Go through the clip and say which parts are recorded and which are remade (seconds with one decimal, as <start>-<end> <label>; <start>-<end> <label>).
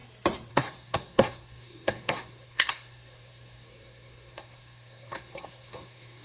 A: 0.0-0.5 recorded; 0.5-6.2 remade